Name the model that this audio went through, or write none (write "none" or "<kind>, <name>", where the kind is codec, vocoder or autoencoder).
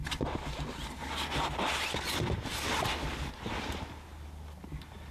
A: none